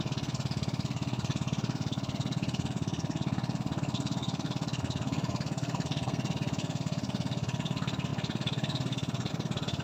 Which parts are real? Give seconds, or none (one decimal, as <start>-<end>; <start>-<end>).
none